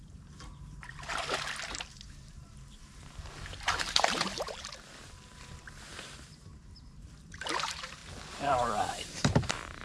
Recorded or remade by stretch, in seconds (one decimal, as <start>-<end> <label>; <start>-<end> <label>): 0.0-1.2 remade; 1.2-1.7 recorded; 1.7-8.0 remade; 8.0-8.9 recorded; 8.9-9.8 remade